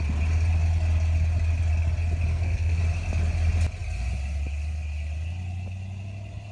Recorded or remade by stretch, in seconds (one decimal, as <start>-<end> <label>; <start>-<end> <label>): 0.0-2.3 recorded; 2.3-2.8 remade; 2.8-6.5 recorded